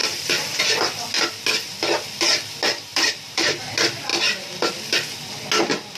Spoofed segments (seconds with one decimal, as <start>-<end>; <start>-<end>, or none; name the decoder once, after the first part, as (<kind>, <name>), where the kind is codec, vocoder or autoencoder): 0.0-0.6 (vocoder, BigVGAN v2); 2.9-3.6